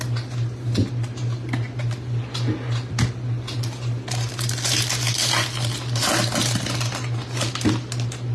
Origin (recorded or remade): recorded